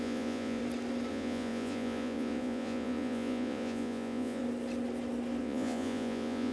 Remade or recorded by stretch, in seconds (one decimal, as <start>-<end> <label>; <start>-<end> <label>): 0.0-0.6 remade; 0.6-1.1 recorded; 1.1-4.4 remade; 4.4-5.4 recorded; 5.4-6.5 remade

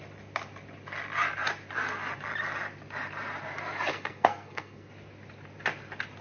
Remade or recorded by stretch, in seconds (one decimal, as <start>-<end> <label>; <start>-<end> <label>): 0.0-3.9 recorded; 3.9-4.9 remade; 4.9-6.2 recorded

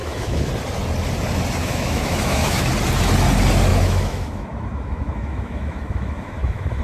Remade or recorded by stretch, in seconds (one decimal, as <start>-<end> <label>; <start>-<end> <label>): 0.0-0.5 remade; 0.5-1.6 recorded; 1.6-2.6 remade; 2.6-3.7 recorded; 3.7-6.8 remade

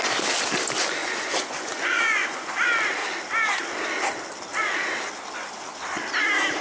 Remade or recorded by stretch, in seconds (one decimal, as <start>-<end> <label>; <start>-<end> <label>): 0.0-1.0 recorded; 1.0-2.5 remade; 2.5-6.6 recorded